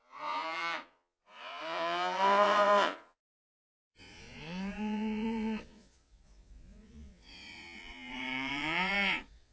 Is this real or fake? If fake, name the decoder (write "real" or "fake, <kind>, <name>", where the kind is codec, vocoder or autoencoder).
fake, vocoder, Vocos